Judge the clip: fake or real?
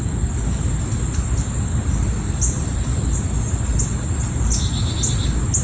real